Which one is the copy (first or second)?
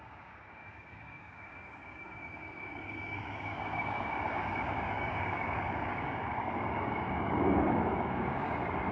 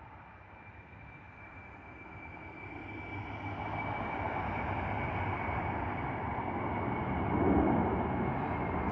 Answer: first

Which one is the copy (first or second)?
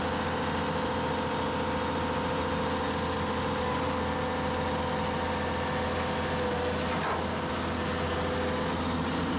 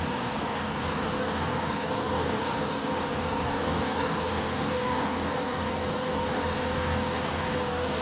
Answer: second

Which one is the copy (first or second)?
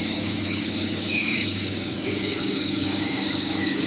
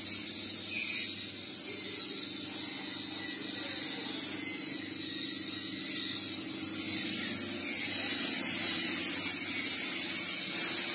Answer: first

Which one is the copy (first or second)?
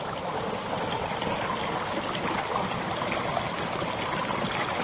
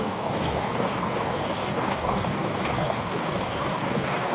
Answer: second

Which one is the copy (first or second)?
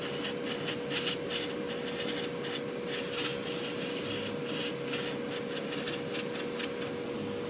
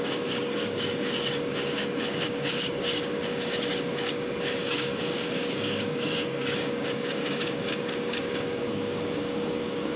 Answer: second